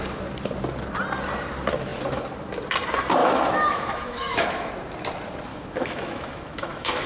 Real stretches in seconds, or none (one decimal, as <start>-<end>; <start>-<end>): 0.0-3.2; 4.7-5.5